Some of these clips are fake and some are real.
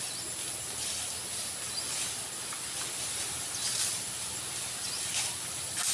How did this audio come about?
real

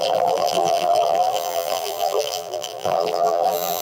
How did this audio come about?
fake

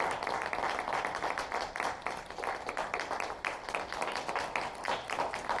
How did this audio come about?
real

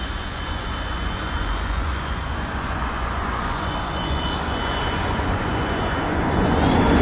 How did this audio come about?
fake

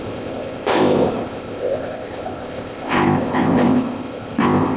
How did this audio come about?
fake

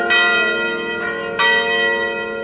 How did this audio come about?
real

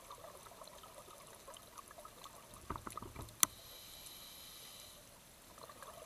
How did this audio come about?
real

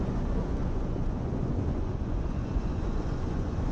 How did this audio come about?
fake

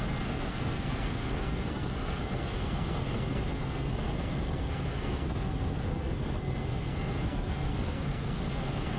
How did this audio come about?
fake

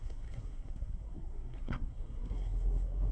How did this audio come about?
fake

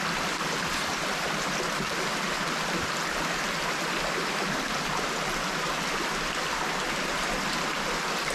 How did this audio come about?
real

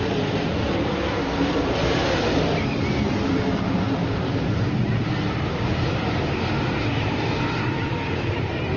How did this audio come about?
fake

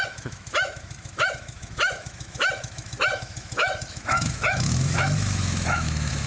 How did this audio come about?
fake